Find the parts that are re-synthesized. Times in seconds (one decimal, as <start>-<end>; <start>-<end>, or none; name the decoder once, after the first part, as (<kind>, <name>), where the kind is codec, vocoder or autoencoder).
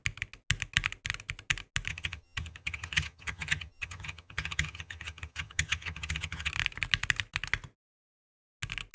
1.9-6.5 (vocoder, HiFi-GAN)